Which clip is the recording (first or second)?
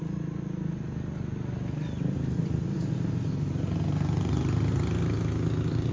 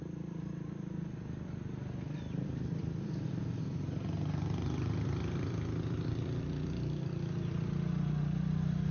first